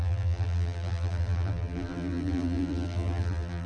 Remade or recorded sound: remade